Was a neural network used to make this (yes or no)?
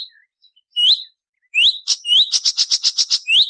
no